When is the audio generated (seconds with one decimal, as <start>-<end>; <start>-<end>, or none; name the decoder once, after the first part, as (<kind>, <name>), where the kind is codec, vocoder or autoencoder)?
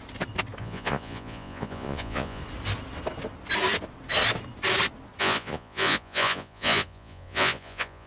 0.6-2.4 (vocoder, Vocos); 5.2-8.1